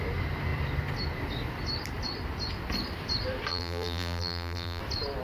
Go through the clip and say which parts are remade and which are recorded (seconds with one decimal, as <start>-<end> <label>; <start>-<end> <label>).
0.0-3.5 recorded; 3.5-4.8 remade; 4.8-5.2 recorded